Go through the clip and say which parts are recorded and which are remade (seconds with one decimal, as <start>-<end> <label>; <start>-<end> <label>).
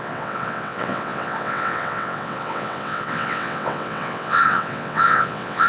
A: 0.0-5.7 remade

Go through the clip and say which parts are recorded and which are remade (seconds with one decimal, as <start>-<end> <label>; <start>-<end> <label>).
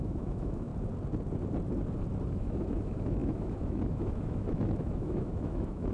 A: 0.0-0.7 remade; 0.7-2.3 recorded; 2.3-5.9 remade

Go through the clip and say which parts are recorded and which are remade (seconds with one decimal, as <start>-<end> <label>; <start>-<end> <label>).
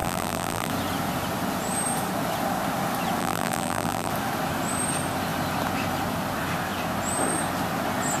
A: 0.0-0.7 remade; 0.7-3.2 recorded; 3.2-4.1 remade; 4.1-8.2 recorded